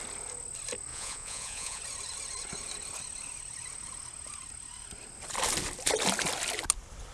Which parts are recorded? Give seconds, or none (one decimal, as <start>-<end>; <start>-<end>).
0.0-0.9; 1.8-7.1